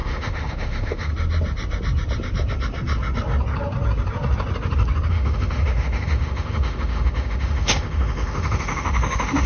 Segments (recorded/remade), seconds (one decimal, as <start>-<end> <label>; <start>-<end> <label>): 0.0-1.1 remade; 1.1-5.1 recorded; 5.1-9.5 remade

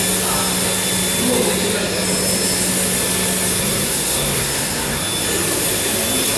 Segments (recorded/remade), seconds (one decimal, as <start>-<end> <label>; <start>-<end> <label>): 0.0-3.6 recorded; 3.6-5.0 remade; 5.0-6.4 recorded

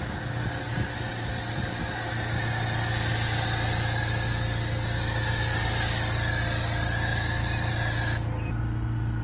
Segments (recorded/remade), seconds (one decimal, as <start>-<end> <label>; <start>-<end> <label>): 0.0-9.2 recorded

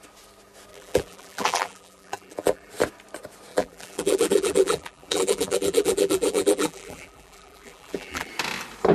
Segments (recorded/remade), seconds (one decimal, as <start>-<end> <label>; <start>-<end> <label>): 0.0-0.7 recorded; 0.7-2.7 remade; 2.7-3.5 recorded; 3.5-8.3 remade; 8.3-8.9 recorded

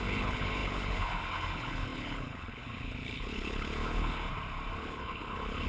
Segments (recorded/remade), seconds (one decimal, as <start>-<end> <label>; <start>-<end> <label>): 0.0-4.3 remade; 4.3-4.8 recorded; 4.8-5.7 remade